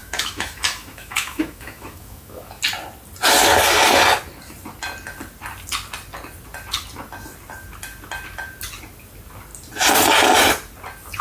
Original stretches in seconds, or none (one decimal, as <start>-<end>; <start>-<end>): 2.6-11.2